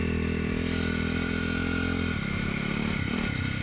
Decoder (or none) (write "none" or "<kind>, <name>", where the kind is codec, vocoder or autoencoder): none